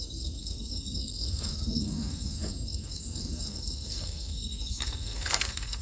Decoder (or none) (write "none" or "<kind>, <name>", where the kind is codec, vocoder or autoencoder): codec, SNAC